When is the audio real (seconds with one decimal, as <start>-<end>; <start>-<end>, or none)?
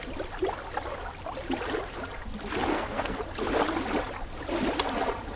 0.0-2.7; 3.2-5.4